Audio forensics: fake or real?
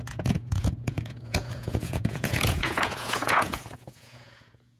fake